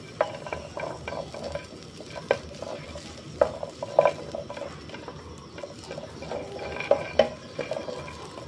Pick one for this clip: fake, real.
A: real